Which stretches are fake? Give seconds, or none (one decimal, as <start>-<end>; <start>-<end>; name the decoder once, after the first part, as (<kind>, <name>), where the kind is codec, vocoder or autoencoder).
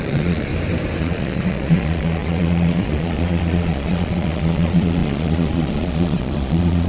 0.0-0.5 (vocoder, Vocos); 1.0-6.9